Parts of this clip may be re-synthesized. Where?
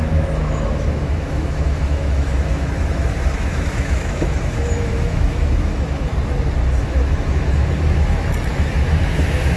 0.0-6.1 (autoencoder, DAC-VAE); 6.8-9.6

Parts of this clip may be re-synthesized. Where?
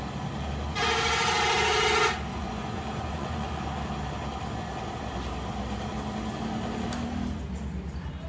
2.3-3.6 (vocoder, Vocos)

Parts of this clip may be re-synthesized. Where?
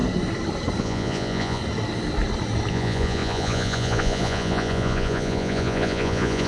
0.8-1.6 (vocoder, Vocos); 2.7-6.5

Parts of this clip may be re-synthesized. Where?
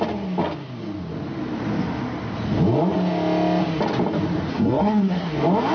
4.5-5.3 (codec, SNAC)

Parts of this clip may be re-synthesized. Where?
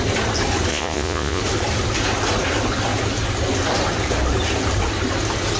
0.7-1.4 (vocoder, Vocos)